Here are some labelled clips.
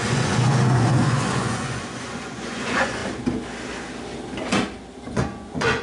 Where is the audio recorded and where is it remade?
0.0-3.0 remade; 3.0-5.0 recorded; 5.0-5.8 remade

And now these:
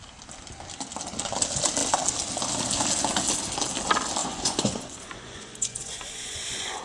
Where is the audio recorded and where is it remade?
0.0-4.2 recorded; 4.2-6.8 remade

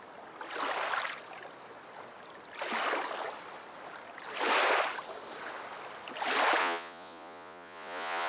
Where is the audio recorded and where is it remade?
0.0-6.6 recorded; 6.6-8.3 remade